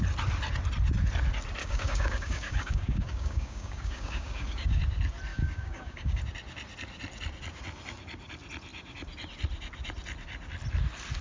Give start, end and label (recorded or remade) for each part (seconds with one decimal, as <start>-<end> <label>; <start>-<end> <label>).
0.0-1.6 recorded; 1.6-4.8 remade; 4.8-5.3 recorded; 5.3-6.2 remade; 6.2-11.2 recorded